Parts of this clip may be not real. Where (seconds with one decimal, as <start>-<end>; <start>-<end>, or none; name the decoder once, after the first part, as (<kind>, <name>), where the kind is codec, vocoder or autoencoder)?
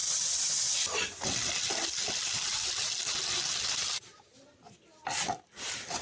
none